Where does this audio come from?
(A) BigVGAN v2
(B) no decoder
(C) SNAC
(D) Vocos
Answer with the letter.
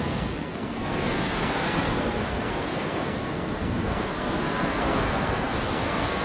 C